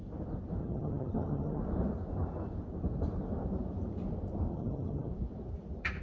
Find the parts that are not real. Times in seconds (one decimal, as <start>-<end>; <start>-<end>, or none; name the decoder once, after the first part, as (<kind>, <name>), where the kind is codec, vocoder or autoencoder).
0.6-1.6 (vocoder, HiFi-GAN); 4.5-5.1